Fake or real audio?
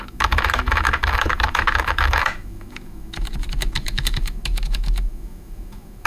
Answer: fake